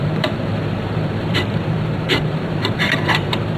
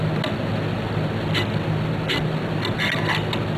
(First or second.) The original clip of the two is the second